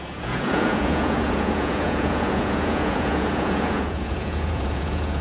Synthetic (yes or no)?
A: yes